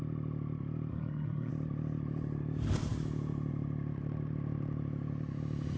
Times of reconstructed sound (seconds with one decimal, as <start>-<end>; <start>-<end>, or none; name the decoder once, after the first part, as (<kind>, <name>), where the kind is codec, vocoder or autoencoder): 0.9-1.5 (codec, SNAC)